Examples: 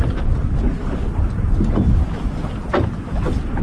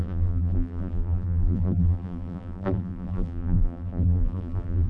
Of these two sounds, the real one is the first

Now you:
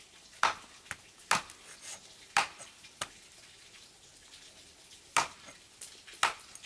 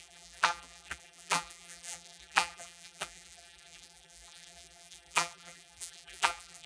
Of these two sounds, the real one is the first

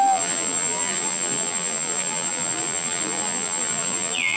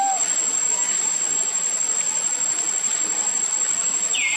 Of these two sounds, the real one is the second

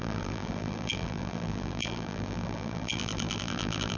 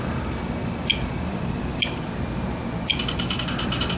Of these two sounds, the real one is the second